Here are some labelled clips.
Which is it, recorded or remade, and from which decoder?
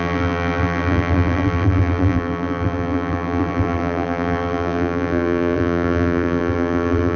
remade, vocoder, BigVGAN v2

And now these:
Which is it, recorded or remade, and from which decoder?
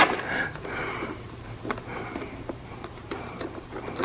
remade, vocoder, BigVGAN v2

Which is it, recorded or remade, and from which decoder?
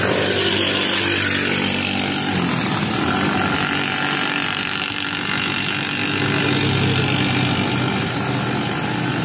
recorded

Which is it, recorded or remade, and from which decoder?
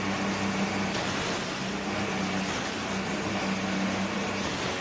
recorded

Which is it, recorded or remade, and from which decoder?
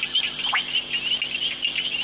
recorded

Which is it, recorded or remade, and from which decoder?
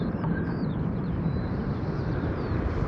remade, vocoder, BigVGAN v2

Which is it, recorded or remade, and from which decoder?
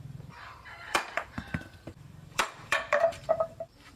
remade, vocoder, BigVGAN v2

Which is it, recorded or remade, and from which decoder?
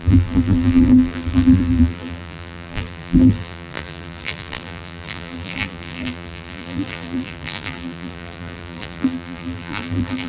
remade, vocoder, BigVGAN v2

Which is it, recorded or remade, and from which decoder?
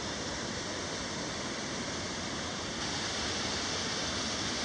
remade, vocoder, BigVGAN v2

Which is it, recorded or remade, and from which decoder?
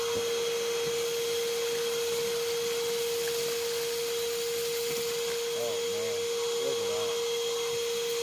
recorded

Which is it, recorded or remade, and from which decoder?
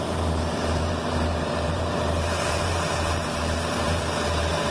remade, vocoder, BigVGAN v2